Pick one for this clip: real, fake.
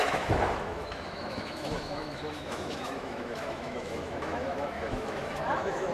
fake